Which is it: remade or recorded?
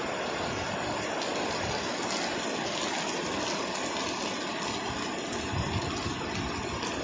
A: recorded